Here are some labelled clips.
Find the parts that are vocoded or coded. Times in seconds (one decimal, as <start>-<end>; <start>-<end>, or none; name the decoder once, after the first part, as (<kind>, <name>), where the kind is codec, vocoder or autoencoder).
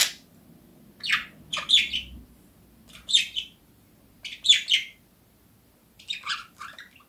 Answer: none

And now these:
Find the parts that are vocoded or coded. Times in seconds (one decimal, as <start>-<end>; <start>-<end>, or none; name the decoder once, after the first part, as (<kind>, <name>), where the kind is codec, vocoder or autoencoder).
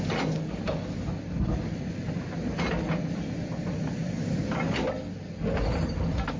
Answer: none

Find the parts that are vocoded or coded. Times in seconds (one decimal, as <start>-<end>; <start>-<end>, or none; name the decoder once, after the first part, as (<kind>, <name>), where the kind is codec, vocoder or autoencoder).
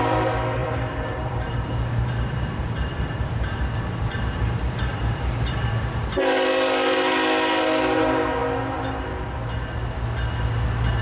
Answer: 0.6-5.7 (vocoder, BigVGAN v2)